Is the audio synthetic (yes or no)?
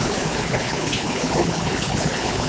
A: yes